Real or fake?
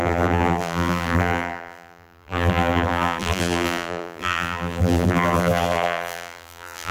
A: fake